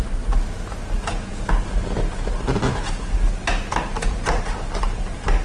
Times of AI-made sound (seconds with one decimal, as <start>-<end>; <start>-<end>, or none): none